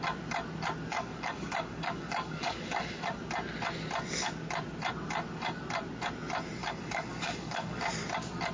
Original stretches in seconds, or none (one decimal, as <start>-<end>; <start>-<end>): 0.0-0.9; 3.2-6.6; 7.8-8.5